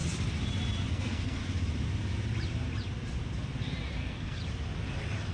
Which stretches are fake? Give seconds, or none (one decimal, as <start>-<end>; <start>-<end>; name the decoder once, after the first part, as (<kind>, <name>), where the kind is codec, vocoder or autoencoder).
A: 0.9-1.4 (codec, SNAC); 4.0-4.4

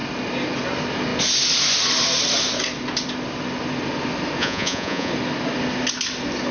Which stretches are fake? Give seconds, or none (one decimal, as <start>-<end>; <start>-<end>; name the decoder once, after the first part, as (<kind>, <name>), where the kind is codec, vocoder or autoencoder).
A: 4.4-5.1 (vocoder, Vocos)

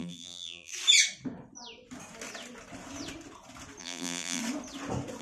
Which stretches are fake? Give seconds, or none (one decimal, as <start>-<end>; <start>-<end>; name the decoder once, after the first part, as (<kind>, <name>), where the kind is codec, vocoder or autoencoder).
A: 0.0-0.7 (vocoder, BigVGAN v2); 3.8-4.4

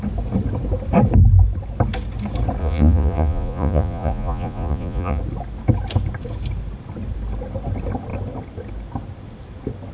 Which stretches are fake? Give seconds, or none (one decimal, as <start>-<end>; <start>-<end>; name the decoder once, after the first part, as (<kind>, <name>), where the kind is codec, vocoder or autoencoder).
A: 2.6-5.2 (vocoder, Vocos)

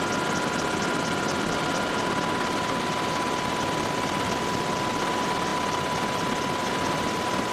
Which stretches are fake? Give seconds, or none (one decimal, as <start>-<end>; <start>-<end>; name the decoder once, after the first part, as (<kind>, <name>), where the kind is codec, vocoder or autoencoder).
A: none

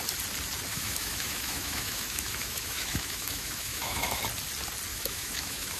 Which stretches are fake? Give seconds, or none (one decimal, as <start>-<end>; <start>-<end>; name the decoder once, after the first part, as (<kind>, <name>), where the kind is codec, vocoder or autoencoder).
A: 0.7-4.2 (autoencoder, DAC-VAE); 4.9-5.8

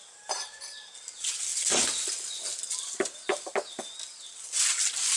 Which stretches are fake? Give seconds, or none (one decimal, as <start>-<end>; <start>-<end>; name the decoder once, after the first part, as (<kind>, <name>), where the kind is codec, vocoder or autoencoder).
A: 0.0-0.9 (vocoder, BigVGAN v2)

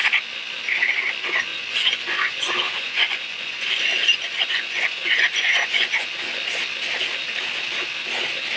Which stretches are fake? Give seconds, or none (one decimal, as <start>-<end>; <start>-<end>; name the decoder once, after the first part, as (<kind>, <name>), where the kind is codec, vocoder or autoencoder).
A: 1.5-6.1 (vocoder, Vocos)